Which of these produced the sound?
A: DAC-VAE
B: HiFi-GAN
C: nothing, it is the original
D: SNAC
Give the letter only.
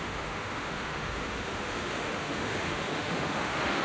A